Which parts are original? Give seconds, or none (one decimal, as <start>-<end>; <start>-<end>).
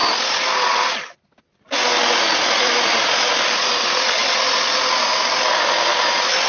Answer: 0.0-4.2; 5.1-6.5